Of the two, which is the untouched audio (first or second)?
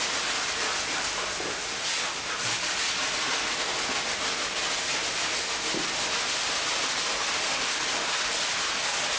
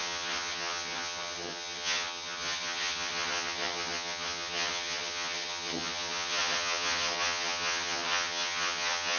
first